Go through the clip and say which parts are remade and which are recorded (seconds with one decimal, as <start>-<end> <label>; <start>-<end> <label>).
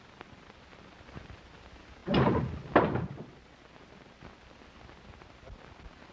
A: 0.0-6.1 recorded